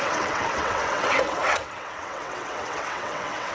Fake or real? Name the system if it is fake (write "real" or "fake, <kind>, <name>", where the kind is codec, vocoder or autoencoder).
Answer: fake, vocoder, WaveNeXt